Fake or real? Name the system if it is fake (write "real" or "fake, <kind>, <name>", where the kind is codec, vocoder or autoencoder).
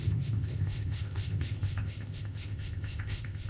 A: fake, codec, ZipCodec